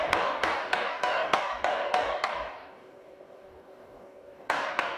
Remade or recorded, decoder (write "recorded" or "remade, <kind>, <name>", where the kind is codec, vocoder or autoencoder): remade, codec, DAC